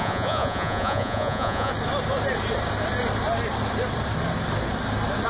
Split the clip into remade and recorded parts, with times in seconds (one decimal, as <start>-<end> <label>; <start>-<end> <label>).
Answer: 0.0-1.7 remade; 1.7-5.3 recorded